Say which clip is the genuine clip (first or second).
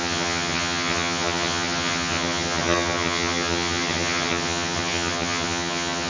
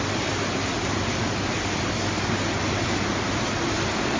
second